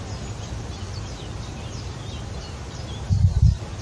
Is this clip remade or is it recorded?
recorded